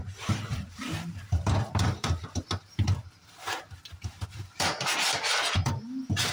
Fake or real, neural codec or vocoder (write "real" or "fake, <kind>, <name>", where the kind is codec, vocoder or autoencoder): fake, vocoder, BigVGAN v2